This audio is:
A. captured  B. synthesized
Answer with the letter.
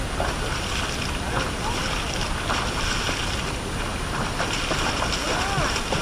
A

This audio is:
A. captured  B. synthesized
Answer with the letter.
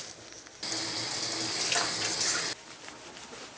A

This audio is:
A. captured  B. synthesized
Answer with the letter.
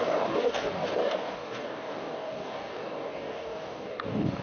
B